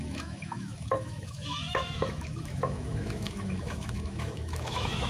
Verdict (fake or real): fake